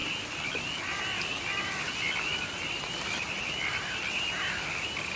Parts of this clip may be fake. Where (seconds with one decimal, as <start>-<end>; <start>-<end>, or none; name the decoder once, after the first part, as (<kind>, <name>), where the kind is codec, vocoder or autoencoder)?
none